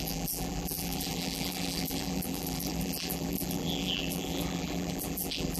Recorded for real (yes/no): no